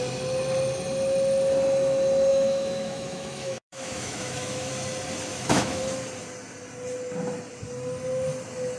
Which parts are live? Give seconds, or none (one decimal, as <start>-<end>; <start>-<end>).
0.0-2.3; 4.7-5.3; 5.8-8.8